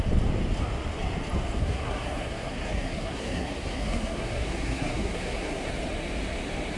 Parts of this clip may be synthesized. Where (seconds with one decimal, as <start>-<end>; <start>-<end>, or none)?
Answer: 1.6-5.7